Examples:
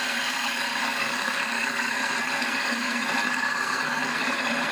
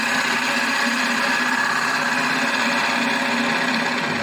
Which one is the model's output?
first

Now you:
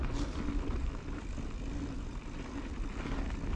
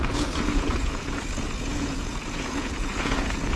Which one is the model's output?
second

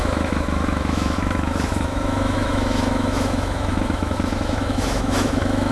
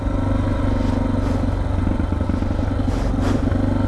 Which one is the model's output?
first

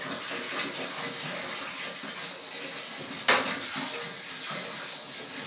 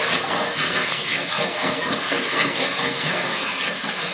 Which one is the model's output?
second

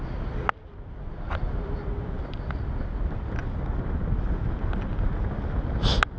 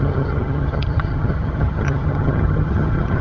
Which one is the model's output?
second